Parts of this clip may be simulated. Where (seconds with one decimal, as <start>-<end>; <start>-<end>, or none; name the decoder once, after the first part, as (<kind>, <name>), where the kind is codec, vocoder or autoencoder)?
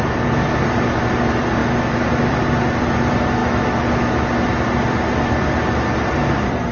1.6-2.3 (autoencoder, DAC-VAE); 3.4-4.3